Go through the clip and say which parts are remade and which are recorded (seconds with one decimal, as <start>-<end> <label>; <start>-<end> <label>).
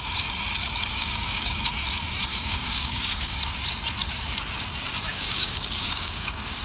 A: 0.0-0.9 recorded; 0.9-1.7 remade; 1.7-2.3 recorded; 2.3-3.4 remade; 3.4-5.1 recorded; 5.1-6.6 remade